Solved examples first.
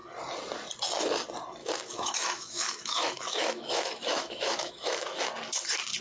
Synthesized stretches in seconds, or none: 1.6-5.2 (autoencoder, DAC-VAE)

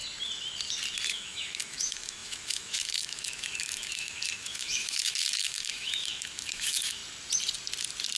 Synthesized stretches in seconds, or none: 1.1-7.0 (autoencoder, DAC-VAE)

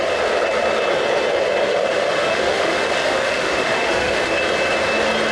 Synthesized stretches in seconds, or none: 1.7-4.4 (autoencoder, DAC-VAE)

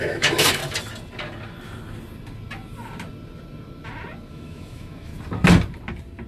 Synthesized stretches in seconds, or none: 0.0-0.6 (autoencoder, DAC-VAE); 4.3-5.1